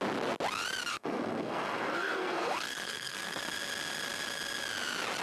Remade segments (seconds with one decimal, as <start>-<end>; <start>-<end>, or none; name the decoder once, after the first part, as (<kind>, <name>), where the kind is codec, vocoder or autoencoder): 0.9-3.4 (codec, SNAC)

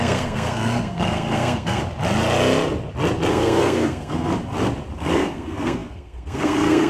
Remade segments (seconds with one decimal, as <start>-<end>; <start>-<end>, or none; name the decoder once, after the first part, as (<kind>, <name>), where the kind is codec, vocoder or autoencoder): 0.0-1.8 (codec, SNAC); 3.3-4.3; 5.0-6.9

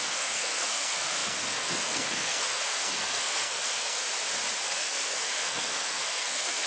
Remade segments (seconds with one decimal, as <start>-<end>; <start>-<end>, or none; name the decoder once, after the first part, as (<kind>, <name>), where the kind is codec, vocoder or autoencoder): 0.0-4.0 (codec, SNAC); 4.6-6.7

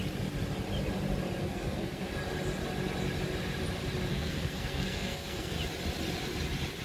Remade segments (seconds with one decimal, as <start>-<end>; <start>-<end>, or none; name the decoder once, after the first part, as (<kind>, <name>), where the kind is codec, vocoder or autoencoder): 1.4-2.1 (codec, SNAC); 4.1-5.6

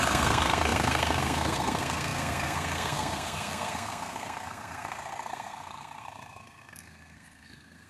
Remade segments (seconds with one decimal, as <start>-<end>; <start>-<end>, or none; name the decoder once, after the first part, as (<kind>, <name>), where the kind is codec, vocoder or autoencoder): 0.0-7.9 (codec, SNAC)

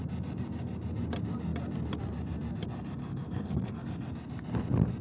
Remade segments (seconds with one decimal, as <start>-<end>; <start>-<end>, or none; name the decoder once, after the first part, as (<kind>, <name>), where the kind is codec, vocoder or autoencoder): 3.0-3.8 (codec, SNAC)

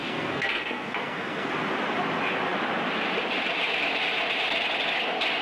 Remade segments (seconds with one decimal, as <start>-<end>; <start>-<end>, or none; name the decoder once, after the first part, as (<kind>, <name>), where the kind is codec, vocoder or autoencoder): 0.0-1.5 (codec, SNAC)